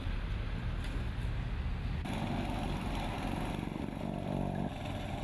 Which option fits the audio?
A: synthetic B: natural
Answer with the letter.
B